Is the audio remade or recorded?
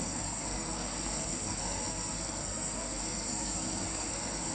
remade